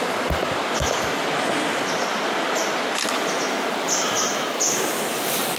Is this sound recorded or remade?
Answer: recorded